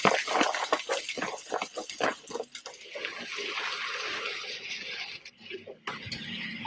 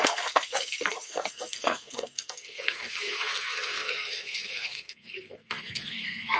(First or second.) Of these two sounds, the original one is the first